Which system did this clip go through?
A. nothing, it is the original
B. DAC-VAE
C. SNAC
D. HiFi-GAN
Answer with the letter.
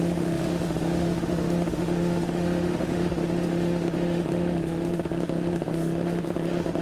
B